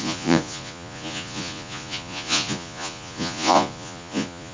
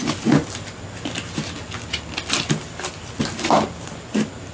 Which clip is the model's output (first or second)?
first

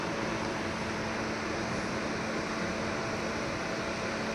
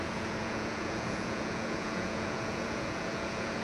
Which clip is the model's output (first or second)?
second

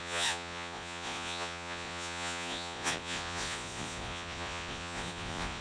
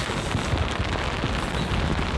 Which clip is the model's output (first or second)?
first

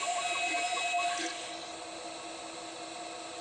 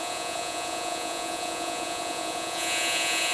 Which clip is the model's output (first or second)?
second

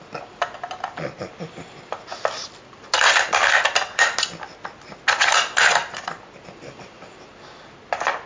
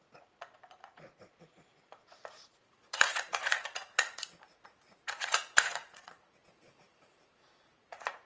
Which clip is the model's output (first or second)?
second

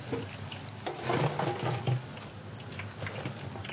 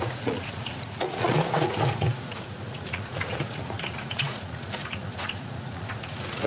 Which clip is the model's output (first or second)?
second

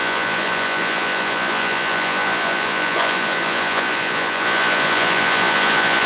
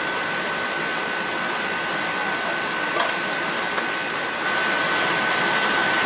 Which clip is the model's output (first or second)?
first